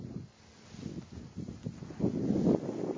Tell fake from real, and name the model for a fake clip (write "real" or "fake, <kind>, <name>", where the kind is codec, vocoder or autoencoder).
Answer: real